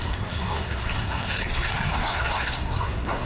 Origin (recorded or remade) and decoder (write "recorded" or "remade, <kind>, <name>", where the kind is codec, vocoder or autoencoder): remade, codec, SNAC